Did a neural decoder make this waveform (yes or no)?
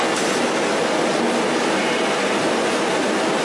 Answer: no